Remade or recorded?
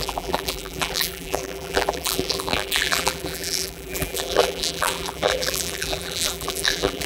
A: remade